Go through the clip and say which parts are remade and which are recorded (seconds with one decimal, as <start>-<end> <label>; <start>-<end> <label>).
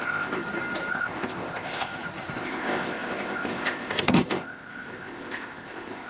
0.0-0.4 remade; 0.4-0.9 recorded; 0.9-1.9 remade; 1.9-2.4 recorded; 2.4-6.1 remade